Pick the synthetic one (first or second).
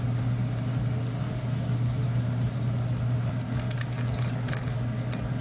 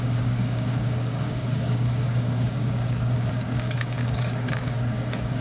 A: second